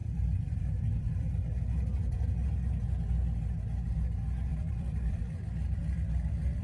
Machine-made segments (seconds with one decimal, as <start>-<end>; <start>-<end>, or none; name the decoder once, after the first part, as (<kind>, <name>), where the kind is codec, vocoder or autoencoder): 0.0-1.3 (vocoder, BigVGAN v2); 4.5-5.2

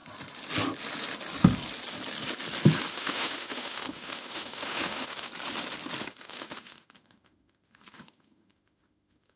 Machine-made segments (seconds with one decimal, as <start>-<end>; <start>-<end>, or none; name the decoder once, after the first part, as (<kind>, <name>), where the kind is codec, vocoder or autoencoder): 2.9-5.3 (autoencoder, DAC-VAE); 6.1-9.4